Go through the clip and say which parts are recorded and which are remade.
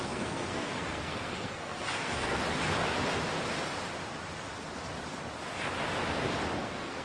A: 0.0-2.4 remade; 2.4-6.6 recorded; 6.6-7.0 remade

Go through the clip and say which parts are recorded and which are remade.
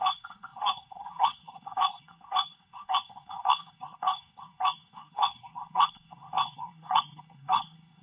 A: 0.0-8.0 remade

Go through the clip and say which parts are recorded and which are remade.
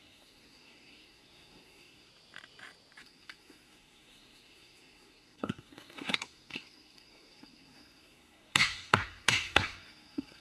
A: 0.0-2.1 remade; 2.1-3.0 recorded; 3.0-10.4 remade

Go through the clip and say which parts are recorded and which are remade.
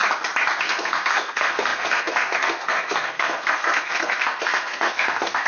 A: 0.0-0.6 recorded; 0.6-5.5 remade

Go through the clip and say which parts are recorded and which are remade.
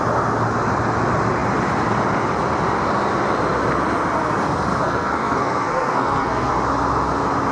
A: 0.0-4.7 recorded; 4.7-6.5 remade; 6.5-7.5 recorded